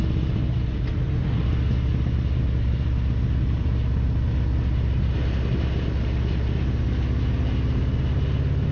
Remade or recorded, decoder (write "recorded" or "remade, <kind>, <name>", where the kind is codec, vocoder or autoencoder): recorded